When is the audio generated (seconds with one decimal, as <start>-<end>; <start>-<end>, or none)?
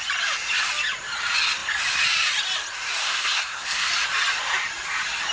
3.0-3.9